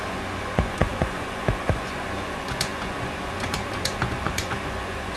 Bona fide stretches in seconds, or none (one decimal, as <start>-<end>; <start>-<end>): none